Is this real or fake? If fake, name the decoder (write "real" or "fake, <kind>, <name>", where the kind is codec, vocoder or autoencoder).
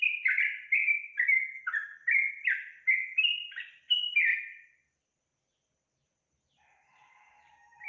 real